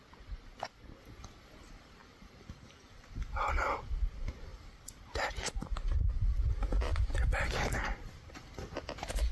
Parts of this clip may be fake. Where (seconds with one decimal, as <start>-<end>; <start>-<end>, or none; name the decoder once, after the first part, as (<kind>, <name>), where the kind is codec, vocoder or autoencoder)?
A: 2.0-3.3 (vocoder, BigVGAN v2); 4.5-6.1